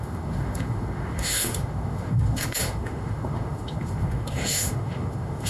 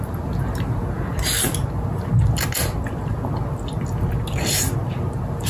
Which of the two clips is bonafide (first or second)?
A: second